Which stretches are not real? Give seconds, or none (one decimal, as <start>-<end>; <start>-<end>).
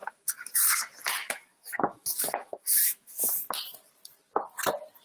0.0-0.6; 1.2-3.4